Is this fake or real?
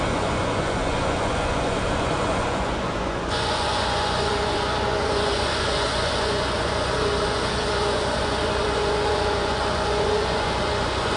fake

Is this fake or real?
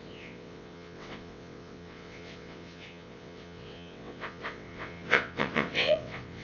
fake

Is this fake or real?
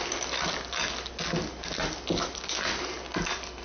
real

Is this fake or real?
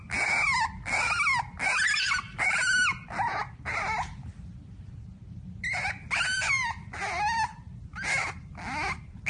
real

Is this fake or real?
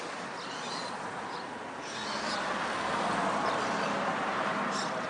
real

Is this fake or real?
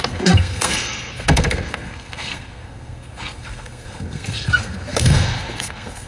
fake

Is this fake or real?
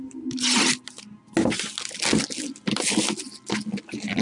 real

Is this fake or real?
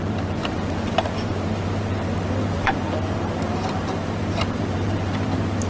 fake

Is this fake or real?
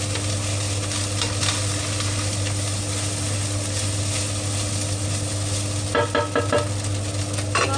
real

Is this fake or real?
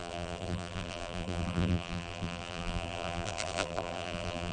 fake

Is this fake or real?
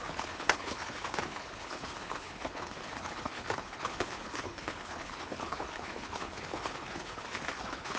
fake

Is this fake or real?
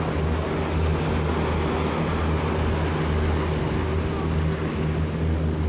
real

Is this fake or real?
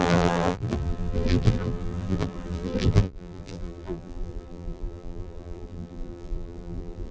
fake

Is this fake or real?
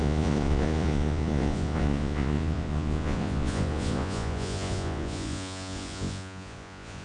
fake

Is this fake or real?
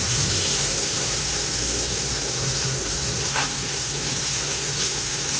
fake